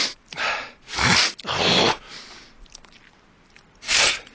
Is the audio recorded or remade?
recorded